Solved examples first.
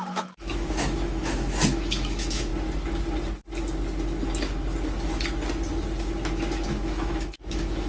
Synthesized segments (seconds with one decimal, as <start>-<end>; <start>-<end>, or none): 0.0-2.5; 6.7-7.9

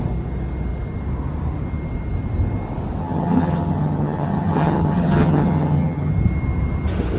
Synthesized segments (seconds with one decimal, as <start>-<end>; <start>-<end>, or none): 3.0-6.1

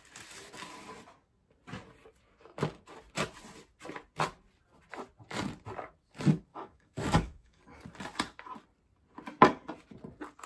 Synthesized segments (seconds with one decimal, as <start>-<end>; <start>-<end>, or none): 6.5-7.6